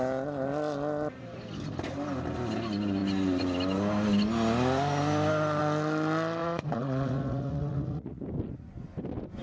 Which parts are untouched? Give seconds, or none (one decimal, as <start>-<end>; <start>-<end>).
0.0-6.4; 8.2-9.4